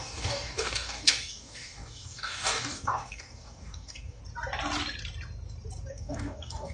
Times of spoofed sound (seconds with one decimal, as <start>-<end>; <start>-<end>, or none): 0.0-4.2; 5.9-6.7